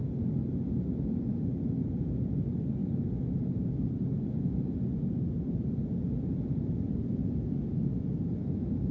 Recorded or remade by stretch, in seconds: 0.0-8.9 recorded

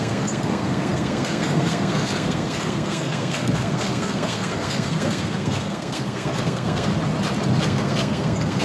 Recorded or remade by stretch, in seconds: 0.0-6.9 remade; 6.9-7.6 recorded; 7.6-8.6 remade

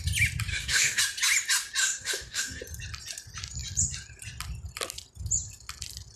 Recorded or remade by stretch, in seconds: 0.0-0.5 recorded; 0.5-1.0 remade; 1.0-1.8 recorded; 1.8-2.6 remade; 2.6-6.2 recorded

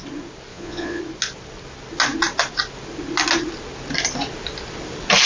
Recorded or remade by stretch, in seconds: 0.0-0.5 recorded; 0.5-1.0 remade; 1.0-5.3 recorded

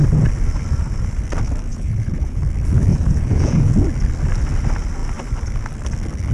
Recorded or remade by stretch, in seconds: 0.0-1.7 recorded; 1.7-2.4 remade; 2.4-2.9 recorded; 2.9-3.7 remade; 3.7-6.3 recorded

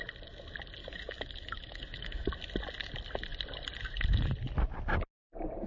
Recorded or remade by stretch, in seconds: 0.0-0.8 recorded; 0.8-2.3 remade; 2.3-5.7 recorded

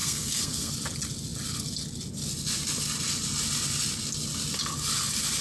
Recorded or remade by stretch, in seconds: 0.0-0.7 remade; 0.7-5.4 recorded